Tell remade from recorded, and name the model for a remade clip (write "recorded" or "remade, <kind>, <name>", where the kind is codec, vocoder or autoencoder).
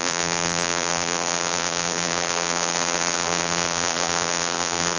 remade, vocoder, BigVGAN v2